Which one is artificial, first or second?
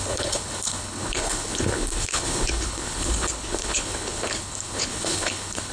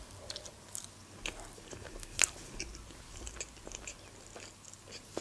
first